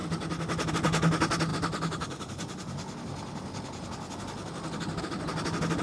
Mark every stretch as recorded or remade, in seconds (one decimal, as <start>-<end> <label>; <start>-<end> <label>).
0.0-5.8 recorded